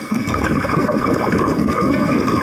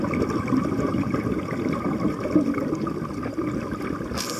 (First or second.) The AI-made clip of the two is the first